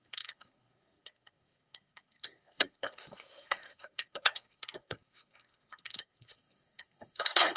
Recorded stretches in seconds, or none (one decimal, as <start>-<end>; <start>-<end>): none